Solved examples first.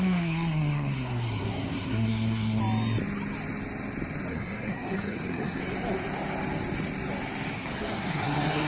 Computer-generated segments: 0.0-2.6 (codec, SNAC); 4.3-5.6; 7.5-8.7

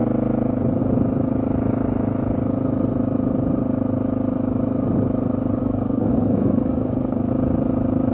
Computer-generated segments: 5.6-7.3 (codec, SNAC)

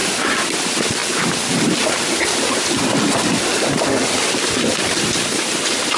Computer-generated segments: none

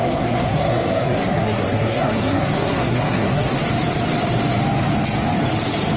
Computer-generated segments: 0.0-3.6 (codec, SNAC)

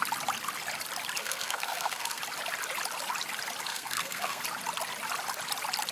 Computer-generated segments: 1.2-2.2 (codec, SNAC); 3.7-4.4